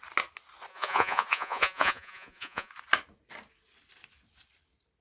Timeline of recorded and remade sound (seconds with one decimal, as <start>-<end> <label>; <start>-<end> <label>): 0.0-0.7 recorded; 0.7-2.7 remade; 2.7-5.0 recorded

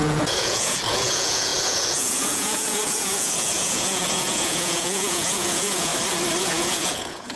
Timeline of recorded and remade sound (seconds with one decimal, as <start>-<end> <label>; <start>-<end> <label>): 0.0-5.9 remade; 5.9-6.4 recorded; 6.4-7.4 remade

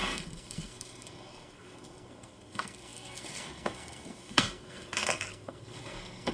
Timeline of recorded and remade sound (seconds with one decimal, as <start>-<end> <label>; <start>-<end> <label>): 0.0-6.3 remade

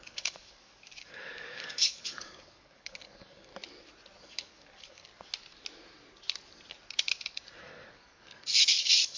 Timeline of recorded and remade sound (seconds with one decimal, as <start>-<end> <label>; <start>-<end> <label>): 0.0-3.5 remade; 3.5-4.2 recorded; 4.2-5.1 remade; 5.1-7.6 recorded; 7.6-9.2 remade

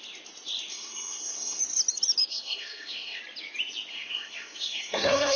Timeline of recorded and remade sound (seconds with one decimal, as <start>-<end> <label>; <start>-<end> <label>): 0.0-0.7 recorded; 0.7-1.6 remade; 1.6-2.3 recorded; 2.3-3.2 remade; 3.2-3.9 recorded; 3.9-5.4 remade